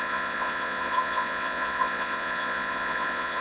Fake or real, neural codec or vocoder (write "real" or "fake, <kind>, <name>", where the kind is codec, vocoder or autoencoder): fake, vocoder, Vocos